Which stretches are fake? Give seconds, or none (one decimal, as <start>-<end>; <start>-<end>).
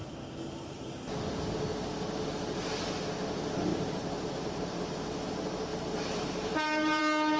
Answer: 3.7-4.8; 5.7-7.0